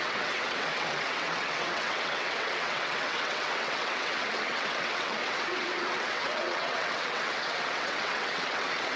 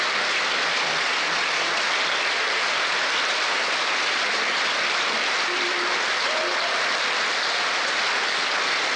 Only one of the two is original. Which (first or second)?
second